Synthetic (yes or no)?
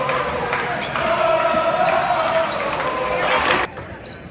no